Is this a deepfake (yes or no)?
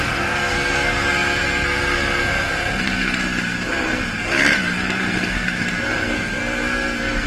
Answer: yes